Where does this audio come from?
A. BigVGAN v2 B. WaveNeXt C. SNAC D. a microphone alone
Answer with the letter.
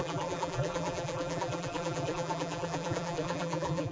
A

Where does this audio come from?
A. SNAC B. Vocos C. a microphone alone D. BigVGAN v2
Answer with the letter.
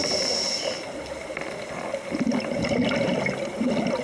C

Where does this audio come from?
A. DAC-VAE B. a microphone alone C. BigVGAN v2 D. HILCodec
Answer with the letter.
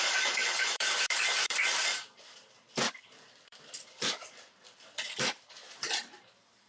C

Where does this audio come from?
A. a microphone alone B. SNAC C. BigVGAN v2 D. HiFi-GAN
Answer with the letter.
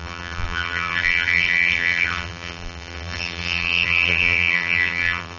C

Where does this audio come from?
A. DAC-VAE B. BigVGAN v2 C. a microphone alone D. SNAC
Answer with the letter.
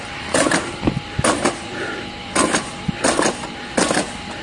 C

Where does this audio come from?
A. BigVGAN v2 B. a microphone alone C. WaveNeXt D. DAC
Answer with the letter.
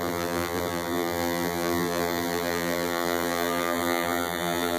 A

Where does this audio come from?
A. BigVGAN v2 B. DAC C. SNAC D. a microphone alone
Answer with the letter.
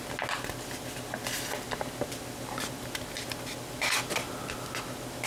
D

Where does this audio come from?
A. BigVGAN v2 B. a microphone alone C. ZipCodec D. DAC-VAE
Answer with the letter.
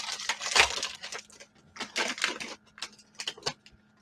B